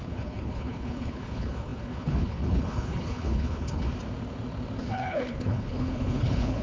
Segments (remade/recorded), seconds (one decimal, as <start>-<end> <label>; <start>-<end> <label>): 0.0-3.9 remade; 3.9-4.8 recorded; 4.8-6.6 remade